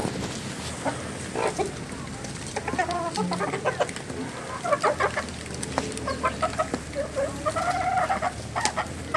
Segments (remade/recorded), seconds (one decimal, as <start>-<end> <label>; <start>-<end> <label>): 0.0-9.2 recorded